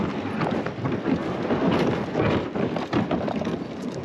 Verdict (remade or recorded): recorded